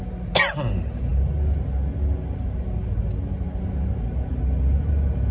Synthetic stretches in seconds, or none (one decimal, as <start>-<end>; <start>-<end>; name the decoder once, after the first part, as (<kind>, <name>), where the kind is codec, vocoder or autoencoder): none